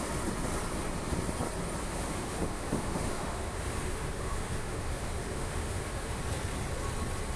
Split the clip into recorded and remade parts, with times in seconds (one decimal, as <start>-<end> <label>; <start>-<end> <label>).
0.0-1.8 recorded; 1.8-6.2 remade; 6.2-7.4 recorded